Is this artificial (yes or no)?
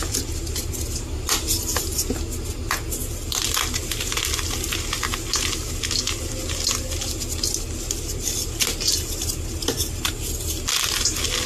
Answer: no